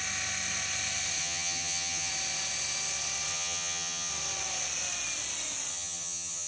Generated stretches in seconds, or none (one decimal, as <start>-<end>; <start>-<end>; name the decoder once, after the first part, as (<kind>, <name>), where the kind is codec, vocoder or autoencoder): 1.2-2.1 (vocoder, HiFi-GAN); 3.3-4.1; 5.7-6.5